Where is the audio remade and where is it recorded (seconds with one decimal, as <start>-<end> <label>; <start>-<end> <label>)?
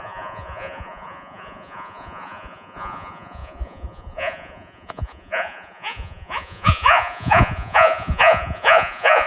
0.0-9.3 remade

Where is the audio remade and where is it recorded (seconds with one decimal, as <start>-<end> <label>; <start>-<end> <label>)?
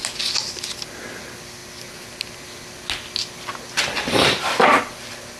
0.0-5.4 recorded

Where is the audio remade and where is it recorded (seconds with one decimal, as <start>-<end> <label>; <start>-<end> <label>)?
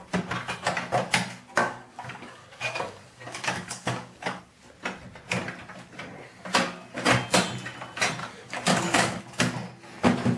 0.0-1.6 recorded; 1.6-4.4 remade; 4.4-8.2 recorded; 8.2-9.2 remade; 9.2-10.4 recorded